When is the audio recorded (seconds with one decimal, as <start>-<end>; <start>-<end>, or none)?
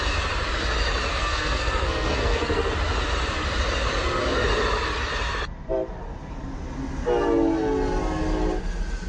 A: 0.0-1.1; 2.7-9.1